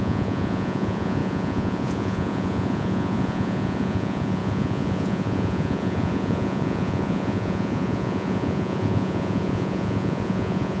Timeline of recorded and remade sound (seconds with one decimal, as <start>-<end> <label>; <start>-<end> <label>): 0.0-10.8 remade